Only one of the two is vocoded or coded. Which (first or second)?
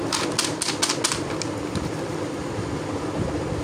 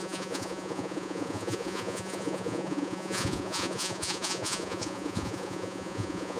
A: second